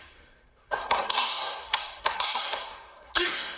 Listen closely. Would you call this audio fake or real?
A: fake